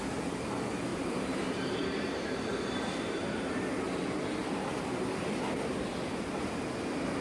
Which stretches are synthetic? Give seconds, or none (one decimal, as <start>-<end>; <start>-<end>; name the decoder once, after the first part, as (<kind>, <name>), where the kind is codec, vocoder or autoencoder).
0.9-3.6 (vocoder, BigVGAN v2)